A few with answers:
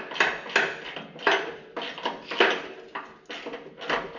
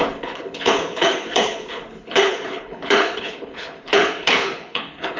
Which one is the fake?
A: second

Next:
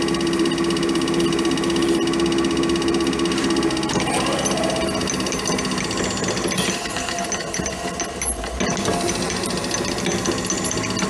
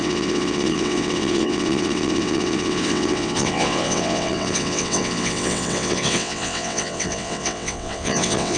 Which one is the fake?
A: second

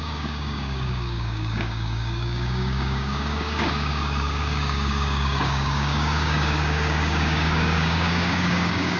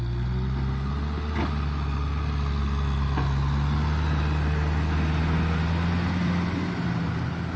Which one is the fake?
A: first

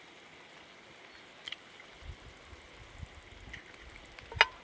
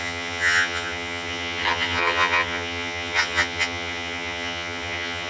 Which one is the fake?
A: second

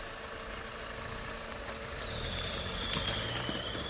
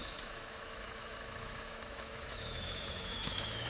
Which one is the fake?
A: second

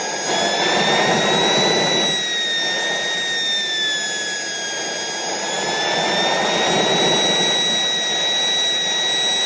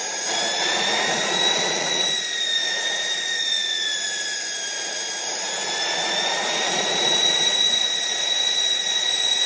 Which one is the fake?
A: second